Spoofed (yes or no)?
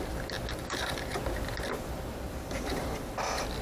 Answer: yes